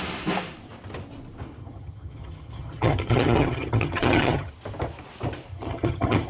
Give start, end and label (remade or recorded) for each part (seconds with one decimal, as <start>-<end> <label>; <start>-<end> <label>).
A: 0.0-1.6 recorded; 1.6-4.5 remade; 4.5-5.5 recorded; 5.5-6.3 remade